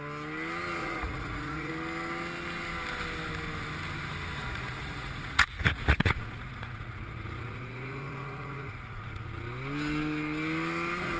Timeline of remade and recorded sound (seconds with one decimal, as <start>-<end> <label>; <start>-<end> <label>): 0.0-0.8 recorded; 0.8-1.7 remade; 1.7-4.4 recorded; 4.4-9.3 remade; 9.3-11.2 recorded